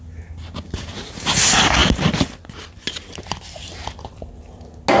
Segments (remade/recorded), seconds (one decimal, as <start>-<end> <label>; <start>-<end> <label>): 0.0-5.0 recorded